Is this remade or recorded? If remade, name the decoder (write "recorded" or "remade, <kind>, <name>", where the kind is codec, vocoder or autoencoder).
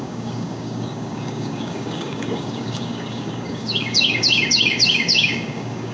remade, codec, DAC